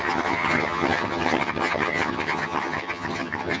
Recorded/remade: remade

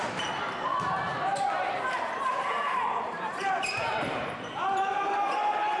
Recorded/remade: remade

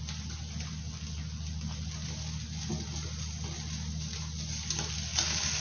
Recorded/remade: recorded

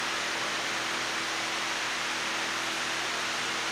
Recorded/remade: recorded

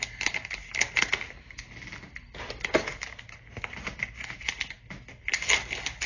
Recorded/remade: recorded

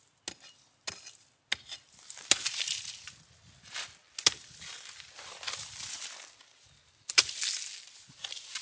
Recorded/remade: recorded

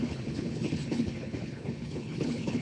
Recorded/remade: remade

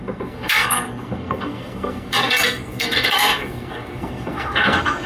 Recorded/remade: remade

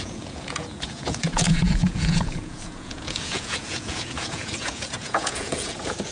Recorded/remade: remade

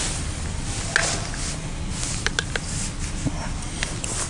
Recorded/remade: recorded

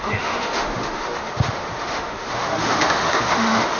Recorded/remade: remade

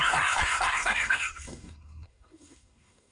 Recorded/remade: remade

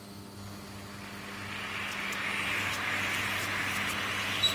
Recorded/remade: recorded